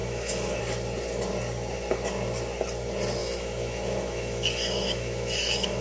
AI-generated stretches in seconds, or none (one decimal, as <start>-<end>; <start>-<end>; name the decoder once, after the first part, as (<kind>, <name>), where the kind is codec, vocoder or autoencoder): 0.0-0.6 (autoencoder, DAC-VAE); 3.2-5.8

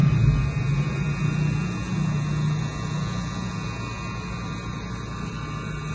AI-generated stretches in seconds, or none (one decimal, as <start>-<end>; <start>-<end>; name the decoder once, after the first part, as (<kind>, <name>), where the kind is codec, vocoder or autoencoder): none

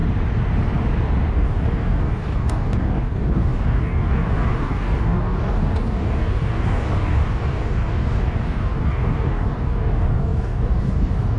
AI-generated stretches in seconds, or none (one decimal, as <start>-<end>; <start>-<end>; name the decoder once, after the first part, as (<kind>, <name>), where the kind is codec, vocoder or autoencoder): 1.3-11.4 (codec, DAC)

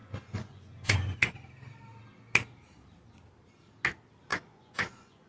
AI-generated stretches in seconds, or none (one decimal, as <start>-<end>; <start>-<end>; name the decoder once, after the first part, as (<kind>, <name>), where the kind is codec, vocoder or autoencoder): 0.0-1.3 (vocoder, Vocos); 4.3-5.3

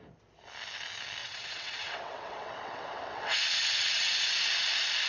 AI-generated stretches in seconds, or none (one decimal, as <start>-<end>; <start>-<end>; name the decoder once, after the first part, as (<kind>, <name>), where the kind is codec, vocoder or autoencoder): 1.2-4.3 (vocoder, WaveNeXt)

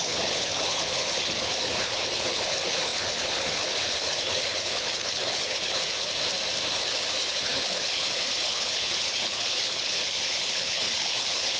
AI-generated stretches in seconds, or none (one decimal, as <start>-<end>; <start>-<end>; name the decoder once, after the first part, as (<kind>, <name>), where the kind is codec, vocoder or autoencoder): 0.0-6.1 (codec, HILCodec); 6.7-11.6